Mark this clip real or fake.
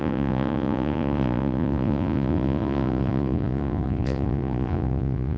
fake